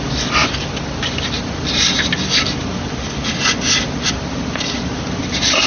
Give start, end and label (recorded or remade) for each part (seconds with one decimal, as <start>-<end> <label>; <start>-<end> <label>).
0.0-5.7 recorded